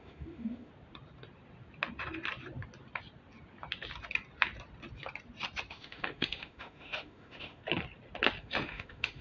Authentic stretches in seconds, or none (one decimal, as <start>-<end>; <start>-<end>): 0.7-5.7; 7.6-8.4